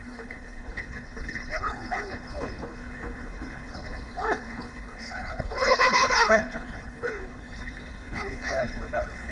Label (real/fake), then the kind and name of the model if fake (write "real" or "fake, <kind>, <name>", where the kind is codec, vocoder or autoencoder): fake, codec, HILCodec